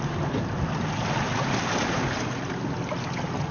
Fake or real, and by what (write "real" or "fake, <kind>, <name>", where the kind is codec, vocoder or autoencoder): real